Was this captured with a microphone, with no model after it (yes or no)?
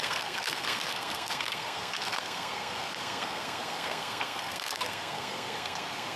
no